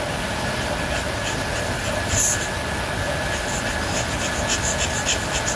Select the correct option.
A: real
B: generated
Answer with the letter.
A